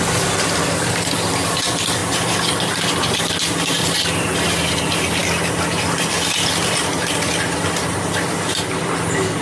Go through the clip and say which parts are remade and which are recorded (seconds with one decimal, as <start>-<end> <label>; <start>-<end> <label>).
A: 0.0-9.4 recorded